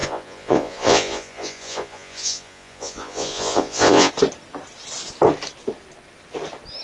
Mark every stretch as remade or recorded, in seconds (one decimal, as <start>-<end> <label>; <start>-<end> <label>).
0.0-4.1 remade; 4.1-6.8 recorded